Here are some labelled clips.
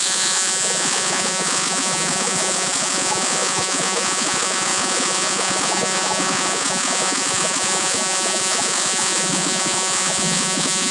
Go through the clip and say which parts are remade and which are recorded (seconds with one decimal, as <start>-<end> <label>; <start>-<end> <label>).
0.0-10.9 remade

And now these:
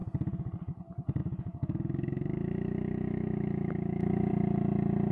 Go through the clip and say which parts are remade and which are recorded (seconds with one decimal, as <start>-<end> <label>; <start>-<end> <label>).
0.0-1.2 recorded; 1.2-4.3 remade; 4.3-5.1 recorded

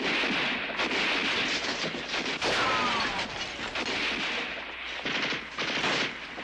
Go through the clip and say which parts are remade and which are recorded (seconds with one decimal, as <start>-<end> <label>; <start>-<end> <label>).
0.0-6.4 recorded